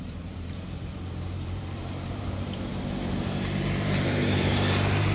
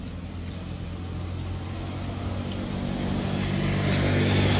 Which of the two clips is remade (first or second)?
first